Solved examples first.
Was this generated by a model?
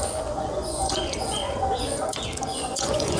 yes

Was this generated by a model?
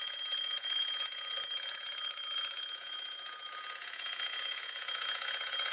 yes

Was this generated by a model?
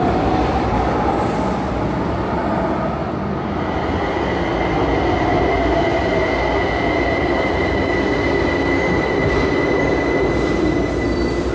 no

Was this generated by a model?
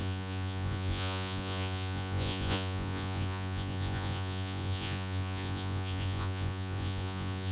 yes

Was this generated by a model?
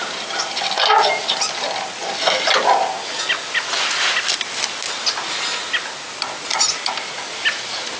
no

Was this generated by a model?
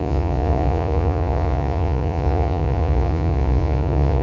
yes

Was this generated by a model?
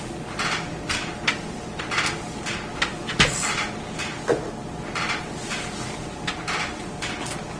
no